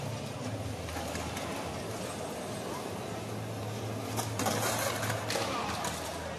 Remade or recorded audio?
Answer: recorded